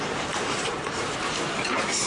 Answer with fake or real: fake